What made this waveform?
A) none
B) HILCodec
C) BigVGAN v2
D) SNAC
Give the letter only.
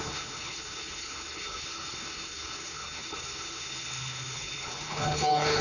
B